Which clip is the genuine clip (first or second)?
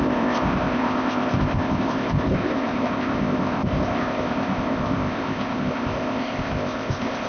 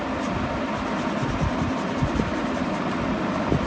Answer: second